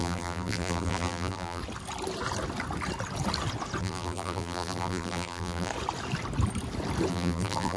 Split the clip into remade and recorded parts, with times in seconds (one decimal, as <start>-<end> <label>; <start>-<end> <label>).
0.0-1.6 remade; 1.6-3.8 recorded; 3.8-5.7 remade; 5.7-7.1 recorded; 7.1-7.8 remade